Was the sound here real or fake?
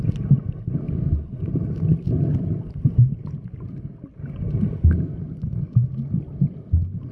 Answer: real